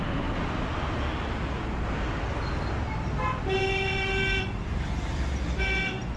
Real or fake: real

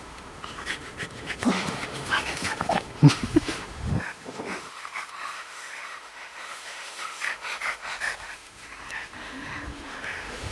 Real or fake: fake